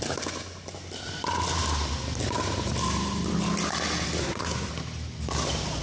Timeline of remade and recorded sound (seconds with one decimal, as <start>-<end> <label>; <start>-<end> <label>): 0.0-4.2 recorded; 4.2-4.7 remade; 4.7-5.8 recorded

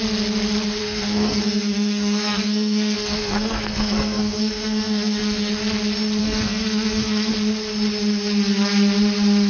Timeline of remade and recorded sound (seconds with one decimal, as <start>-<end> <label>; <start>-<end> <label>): 0.0-0.8 recorded; 0.8-5.5 remade; 5.5-6.2 recorded; 6.2-7.3 remade; 7.3-9.5 recorded

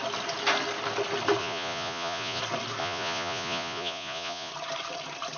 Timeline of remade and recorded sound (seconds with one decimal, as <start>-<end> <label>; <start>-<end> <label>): 0.0-1.4 recorded; 1.4-2.4 remade; 2.4-2.8 recorded; 2.8-4.5 remade; 4.5-5.4 recorded

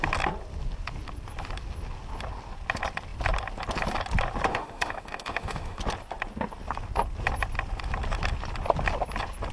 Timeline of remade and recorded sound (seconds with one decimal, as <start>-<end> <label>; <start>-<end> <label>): 0.0-4.5 recorded; 4.5-5.8 remade; 5.8-9.5 recorded

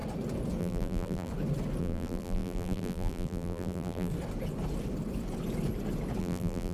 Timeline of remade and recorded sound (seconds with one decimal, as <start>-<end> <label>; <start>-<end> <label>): 0.0-0.6 recorded; 0.6-1.3 remade; 1.3-1.8 recorded; 1.8-4.1 remade; 4.1-6.2 recorded; 6.2-6.7 remade